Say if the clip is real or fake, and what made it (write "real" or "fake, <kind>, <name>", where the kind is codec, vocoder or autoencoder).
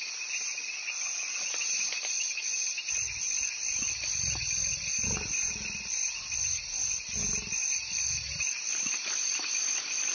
real